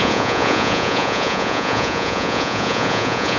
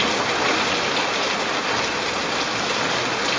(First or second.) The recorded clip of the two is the second